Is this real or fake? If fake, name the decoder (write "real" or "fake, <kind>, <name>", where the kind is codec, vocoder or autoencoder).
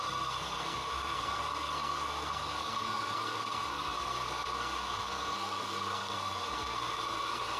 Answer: fake, codec, SNAC